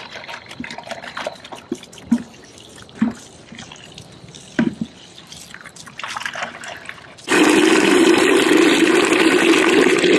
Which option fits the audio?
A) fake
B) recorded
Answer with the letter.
B